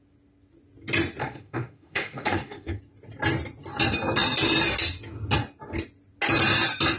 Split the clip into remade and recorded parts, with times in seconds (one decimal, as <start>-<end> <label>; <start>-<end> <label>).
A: 0.0-1.2 recorded; 1.2-2.8 remade; 2.8-7.0 recorded